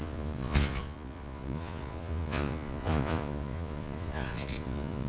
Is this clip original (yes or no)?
no